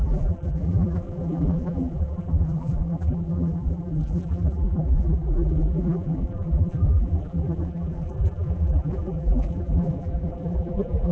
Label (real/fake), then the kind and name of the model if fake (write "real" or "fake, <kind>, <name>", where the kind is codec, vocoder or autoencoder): fake, vocoder, BigVGAN v2